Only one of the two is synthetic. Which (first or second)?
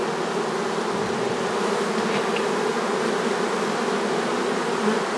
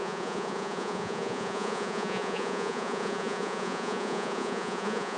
second